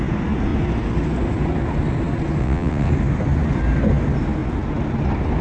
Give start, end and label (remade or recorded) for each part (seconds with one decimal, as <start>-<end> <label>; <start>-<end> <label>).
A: 0.0-2.4 recorded; 2.4-2.9 remade; 2.9-5.4 recorded